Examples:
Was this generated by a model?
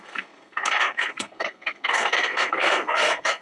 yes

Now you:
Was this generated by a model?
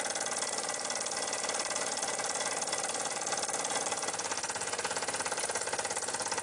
no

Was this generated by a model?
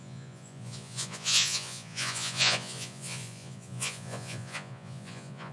yes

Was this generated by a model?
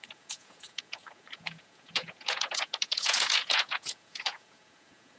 yes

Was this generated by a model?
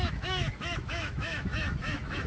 yes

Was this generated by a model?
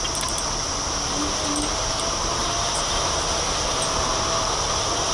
no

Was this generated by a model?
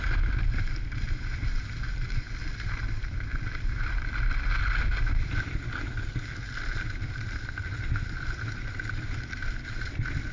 no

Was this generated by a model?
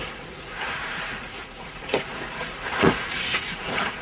yes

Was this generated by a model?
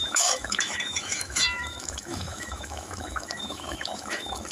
yes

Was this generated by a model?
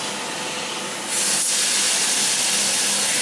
no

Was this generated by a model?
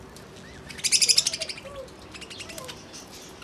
no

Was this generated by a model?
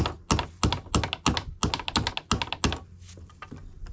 no